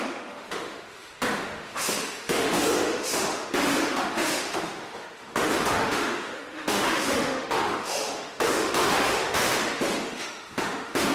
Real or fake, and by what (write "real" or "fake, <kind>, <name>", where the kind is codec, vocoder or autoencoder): fake, autoencoder, DAC-VAE